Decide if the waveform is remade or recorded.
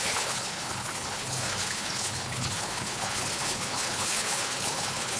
remade